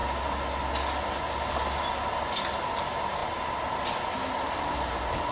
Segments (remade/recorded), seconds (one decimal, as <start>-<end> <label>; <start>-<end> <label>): 0.0-5.3 recorded